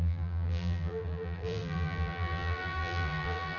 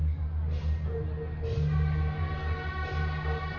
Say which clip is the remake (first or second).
first